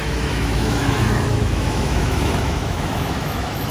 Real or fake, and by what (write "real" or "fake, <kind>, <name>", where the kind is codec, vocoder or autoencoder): fake, autoencoder, DAC-VAE